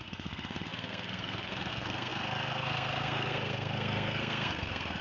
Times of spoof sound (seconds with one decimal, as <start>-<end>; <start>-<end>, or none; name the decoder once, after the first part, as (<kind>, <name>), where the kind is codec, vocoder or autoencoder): 0.0-5.0 (codec, SNAC)